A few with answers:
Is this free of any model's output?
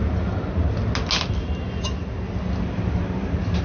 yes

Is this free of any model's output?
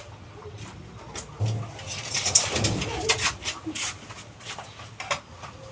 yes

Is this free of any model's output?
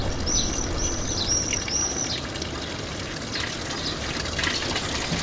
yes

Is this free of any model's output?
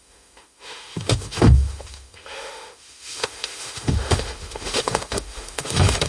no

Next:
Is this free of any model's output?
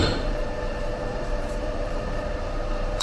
no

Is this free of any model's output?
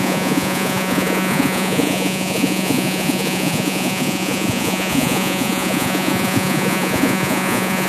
no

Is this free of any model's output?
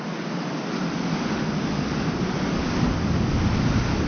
yes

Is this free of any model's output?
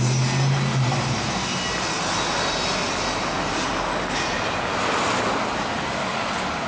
yes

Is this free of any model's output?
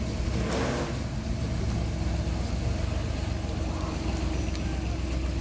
yes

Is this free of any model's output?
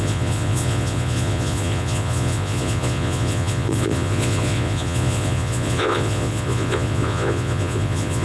no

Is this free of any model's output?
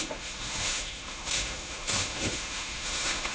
no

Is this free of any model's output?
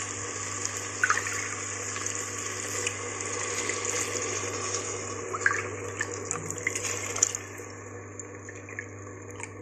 yes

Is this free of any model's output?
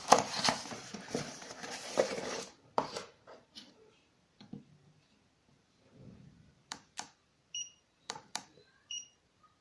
no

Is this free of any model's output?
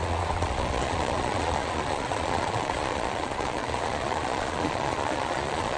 no